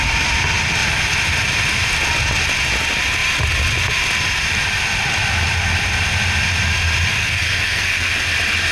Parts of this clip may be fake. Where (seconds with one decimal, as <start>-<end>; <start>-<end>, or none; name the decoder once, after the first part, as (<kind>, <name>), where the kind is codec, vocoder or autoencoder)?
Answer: 7.2-8.1 (codec, SNAC)